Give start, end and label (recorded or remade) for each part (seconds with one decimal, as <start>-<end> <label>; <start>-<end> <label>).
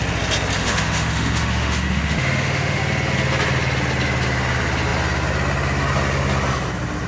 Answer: 0.0-0.6 recorded; 0.6-2.8 remade; 2.8-7.1 recorded